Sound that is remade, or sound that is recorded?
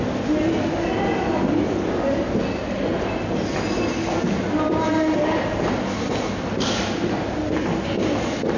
recorded